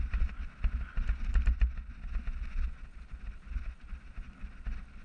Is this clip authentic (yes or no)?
yes